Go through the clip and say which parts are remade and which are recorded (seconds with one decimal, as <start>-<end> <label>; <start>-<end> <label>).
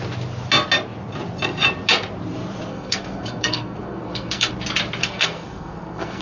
0.0-2.7 recorded; 2.7-4.5 remade; 4.5-5.0 recorded; 5.0-6.2 remade